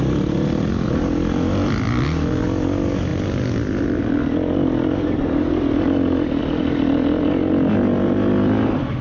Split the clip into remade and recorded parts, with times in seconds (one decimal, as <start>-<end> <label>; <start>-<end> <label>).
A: 0.0-9.0 recorded